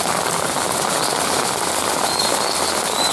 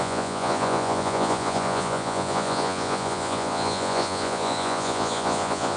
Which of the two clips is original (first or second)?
first